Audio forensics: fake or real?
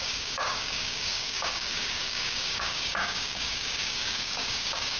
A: fake